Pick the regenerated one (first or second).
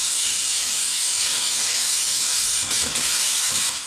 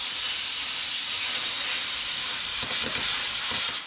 first